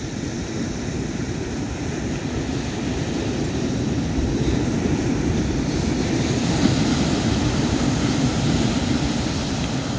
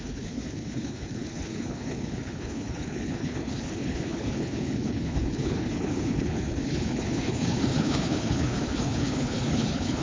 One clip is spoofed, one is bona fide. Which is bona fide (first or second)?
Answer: first